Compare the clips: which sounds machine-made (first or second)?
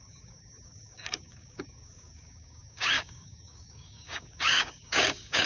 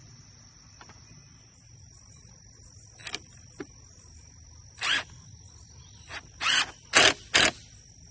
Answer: first